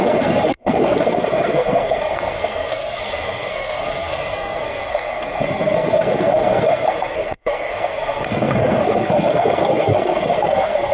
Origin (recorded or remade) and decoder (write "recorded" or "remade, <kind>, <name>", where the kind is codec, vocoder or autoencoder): remade, codec, SNAC